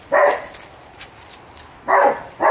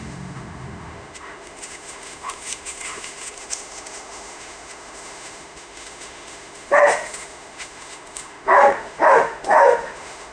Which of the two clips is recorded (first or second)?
first